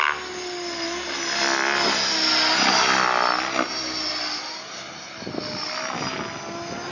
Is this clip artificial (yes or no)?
no